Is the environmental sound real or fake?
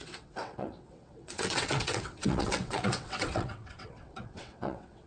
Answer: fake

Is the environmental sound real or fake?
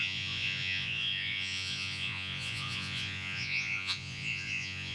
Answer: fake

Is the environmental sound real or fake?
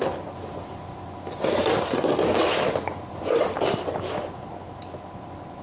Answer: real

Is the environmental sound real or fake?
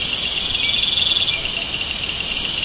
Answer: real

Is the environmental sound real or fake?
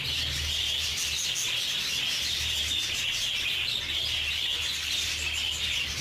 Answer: real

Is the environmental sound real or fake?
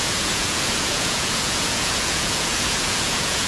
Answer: fake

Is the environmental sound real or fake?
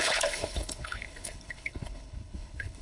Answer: fake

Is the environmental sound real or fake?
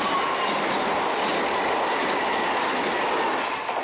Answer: real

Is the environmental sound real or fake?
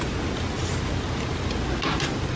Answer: real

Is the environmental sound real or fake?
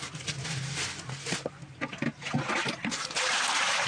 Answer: real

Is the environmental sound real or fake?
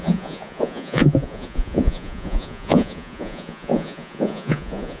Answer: fake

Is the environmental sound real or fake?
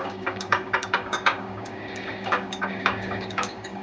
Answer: fake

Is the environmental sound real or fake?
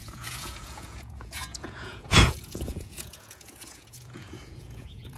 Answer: fake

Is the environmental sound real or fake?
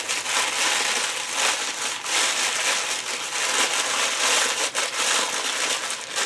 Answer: real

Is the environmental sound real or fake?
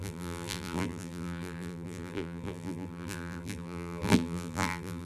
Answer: fake